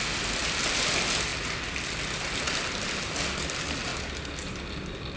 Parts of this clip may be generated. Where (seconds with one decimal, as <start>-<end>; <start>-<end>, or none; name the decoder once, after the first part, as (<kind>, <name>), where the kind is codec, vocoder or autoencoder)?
none